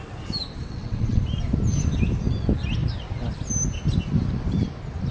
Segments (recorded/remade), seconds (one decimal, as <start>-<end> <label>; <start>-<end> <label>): 0.0-0.6 recorded; 0.6-1.2 remade; 1.2-5.1 recorded